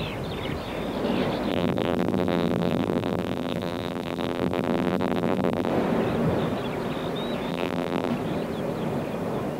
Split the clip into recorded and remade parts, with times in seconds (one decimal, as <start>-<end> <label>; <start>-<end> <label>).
0.0-1.5 recorded; 1.5-5.7 remade; 5.7-7.5 recorded; 7.5-8.1 remade; 8.1-9.6 recorded